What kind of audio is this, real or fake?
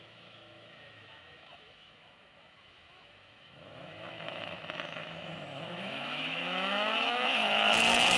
fake